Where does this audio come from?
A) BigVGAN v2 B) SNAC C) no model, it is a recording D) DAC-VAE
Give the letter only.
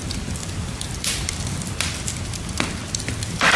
A